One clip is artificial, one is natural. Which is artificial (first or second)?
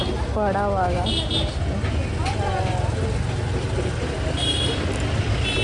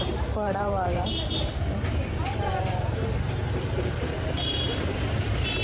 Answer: second